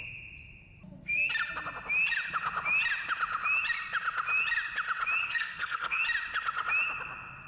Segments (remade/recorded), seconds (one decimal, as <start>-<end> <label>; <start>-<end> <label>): 0.0-5.2 recorded; 5.2-6.0 remade; 6.0-7.5 recorded